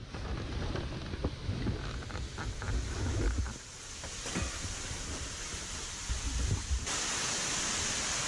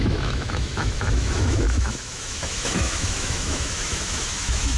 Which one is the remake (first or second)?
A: second